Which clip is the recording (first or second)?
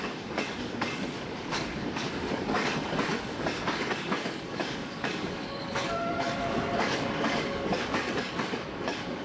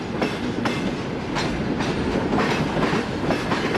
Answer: second